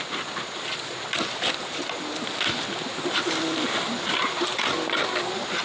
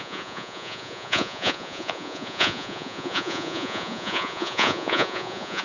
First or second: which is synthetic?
second